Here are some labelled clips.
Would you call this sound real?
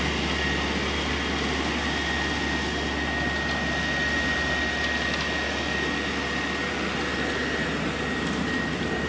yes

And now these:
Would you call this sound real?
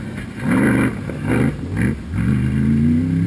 yes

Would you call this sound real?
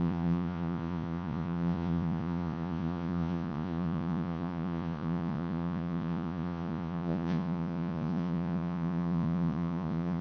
no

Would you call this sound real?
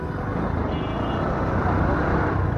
yes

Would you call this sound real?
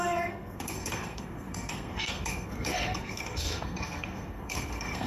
no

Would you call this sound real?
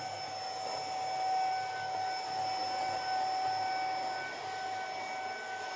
yes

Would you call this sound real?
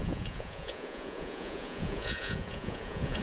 no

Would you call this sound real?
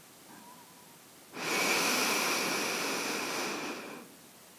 yes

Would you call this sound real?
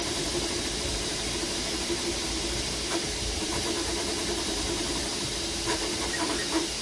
no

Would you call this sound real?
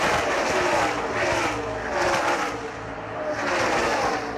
yes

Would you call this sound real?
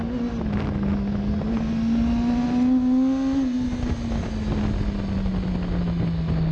yes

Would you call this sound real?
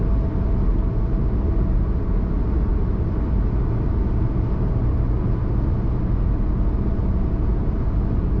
yes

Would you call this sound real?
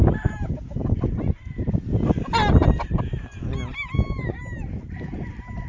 yes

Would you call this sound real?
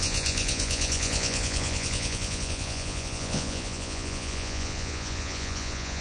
no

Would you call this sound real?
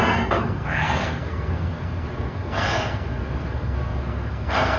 no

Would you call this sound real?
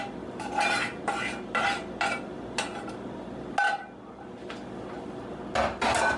yes